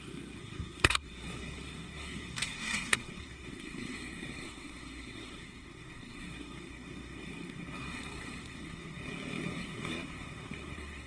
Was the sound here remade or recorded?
remade